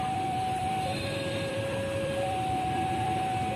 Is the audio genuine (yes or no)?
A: no